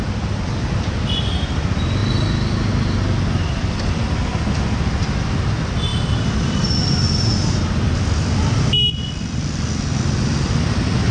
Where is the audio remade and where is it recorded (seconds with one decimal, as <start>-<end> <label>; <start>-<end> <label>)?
0.0-11.1 recorded